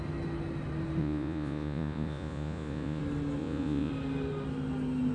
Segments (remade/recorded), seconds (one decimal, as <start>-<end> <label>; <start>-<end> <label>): 0.0-1.0 recorded; 1.0-3.0 remade; 3.0-3.4 recorded; 3.4-3.9 remade; 3.9-5.1 recorded